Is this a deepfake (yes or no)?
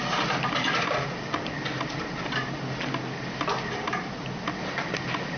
no